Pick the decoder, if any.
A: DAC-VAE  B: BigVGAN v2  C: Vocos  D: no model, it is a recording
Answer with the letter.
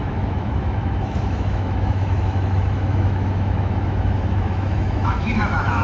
A